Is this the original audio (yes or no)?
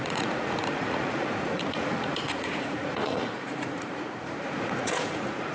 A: no